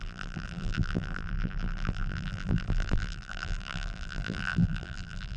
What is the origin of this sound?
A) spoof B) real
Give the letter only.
A